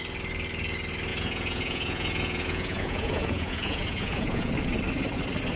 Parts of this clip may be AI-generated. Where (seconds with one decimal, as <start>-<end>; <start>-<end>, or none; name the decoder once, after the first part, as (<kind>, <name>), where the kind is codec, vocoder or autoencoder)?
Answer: 1.1-4.5 (vocoder, Vocos)